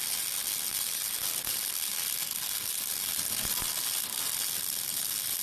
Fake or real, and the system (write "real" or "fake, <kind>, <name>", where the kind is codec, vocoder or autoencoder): real